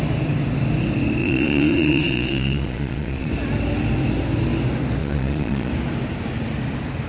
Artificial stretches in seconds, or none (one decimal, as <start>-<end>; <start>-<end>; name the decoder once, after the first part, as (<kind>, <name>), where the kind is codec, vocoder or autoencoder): 1.2-3.3 (vocoder, Vocos); 5.0-5.7

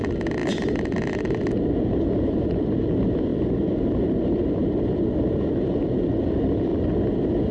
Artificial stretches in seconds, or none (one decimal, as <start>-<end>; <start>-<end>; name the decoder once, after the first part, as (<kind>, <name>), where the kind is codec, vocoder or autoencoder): 0.0-0.4 (vocoder, BigVGAN v2); 1.9-6.7